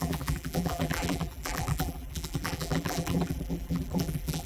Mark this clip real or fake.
fake